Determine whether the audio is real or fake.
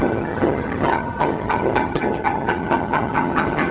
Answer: fake